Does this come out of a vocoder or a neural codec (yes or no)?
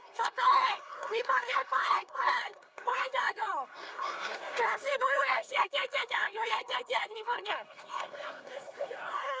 yes